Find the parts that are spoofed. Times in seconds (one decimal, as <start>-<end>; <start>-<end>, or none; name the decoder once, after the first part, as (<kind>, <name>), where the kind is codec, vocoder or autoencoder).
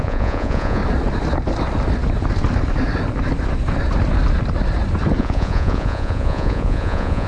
0.0-0.8 (vocoder, Vocos); 5.2-7.3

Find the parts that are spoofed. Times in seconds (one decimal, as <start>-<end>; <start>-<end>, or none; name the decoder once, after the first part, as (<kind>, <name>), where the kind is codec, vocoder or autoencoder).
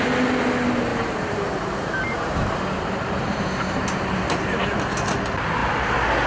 0.9-4.6 (vocoder, BigVGAN v2)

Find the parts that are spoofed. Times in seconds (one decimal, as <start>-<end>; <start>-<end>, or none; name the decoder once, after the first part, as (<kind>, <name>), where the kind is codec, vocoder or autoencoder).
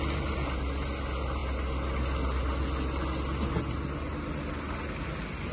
none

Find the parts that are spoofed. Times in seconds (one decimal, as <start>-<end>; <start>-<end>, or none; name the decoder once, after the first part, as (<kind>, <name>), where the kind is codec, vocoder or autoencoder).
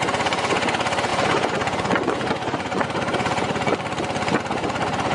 0.0-3.7 (vocoder, Vocos); 4.5-5.1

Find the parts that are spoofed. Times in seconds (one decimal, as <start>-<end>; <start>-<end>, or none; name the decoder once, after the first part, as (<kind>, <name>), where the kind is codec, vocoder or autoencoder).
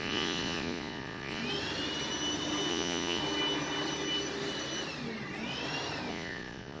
0.0-1.4 (vocoder, Vocos); 2.7-3.2; 6.1-6.8